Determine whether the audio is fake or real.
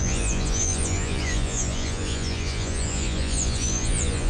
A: fake